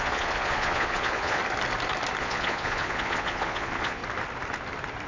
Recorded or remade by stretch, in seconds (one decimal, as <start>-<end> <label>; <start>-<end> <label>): 0.0-1.4 remade; 1.4-2.2 recorded; 2.2-4.0 remade; 4.0-5.1 recorded